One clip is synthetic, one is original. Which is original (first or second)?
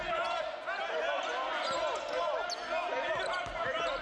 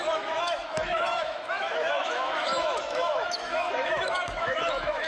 first